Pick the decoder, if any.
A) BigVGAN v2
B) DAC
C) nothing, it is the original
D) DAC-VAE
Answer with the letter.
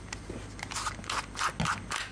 C